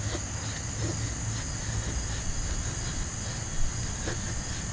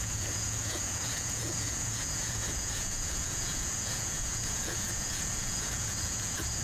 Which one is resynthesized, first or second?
second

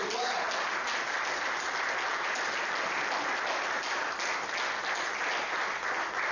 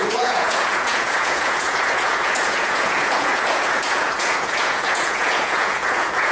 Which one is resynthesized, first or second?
second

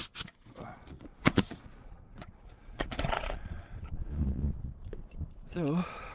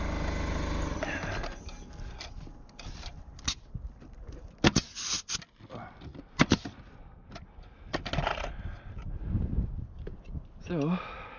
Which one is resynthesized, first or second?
first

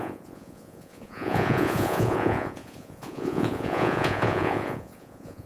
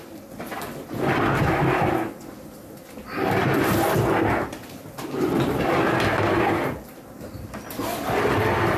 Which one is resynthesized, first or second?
first